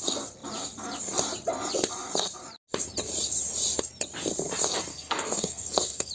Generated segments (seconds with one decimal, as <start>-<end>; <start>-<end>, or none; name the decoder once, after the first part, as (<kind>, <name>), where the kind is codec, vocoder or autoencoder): 4.9-6.1 (codec, SNAC)